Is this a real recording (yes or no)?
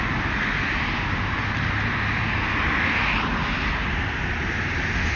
yes